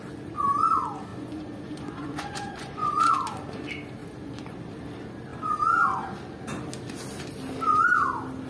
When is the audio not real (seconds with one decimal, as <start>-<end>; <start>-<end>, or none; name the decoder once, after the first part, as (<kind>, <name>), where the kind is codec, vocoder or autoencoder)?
1.1-3.1 (vocoder, Vocos); 4.0-4.6